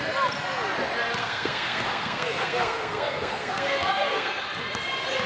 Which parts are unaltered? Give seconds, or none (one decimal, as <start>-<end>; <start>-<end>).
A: 0.0-1.2; 4.4-5.3